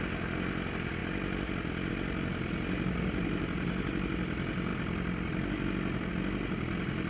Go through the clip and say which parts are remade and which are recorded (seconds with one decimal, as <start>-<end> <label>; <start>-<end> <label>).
0.0-7.1 recorded